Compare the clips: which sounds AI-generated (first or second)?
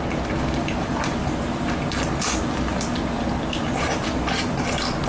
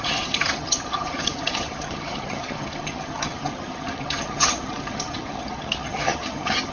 second